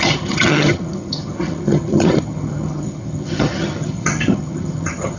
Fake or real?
fake